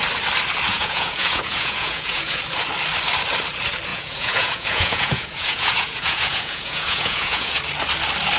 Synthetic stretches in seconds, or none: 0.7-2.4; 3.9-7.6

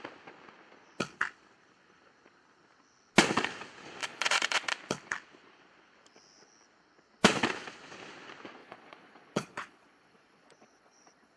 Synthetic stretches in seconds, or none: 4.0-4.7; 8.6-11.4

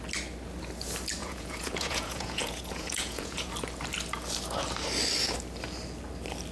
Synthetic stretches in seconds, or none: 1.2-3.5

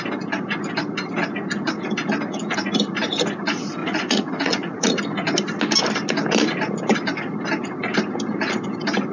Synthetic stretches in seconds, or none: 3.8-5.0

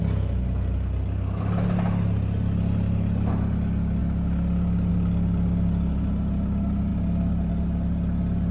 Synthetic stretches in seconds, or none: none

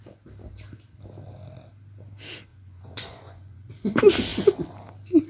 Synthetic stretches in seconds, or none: 2.5-3.7